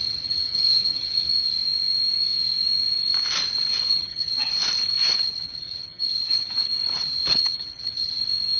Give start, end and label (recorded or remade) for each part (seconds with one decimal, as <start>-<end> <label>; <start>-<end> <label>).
0.0-1.3 remade; 1.3-3.9 recorded; 3.9-4.5 remade; 4.5-5.0 recorded; 5.0-6.7 remade; 6.7-7.3 recorded; 7.3-8.1 remade; 8.1-8.6 recorded